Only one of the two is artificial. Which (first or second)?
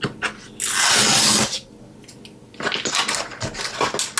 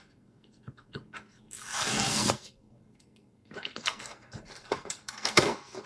second